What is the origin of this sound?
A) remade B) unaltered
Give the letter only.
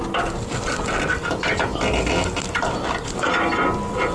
B